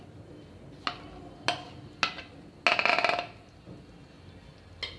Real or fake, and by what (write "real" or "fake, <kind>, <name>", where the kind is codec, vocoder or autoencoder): real